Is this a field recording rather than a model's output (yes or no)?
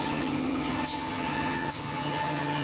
no